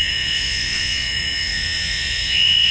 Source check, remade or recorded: remade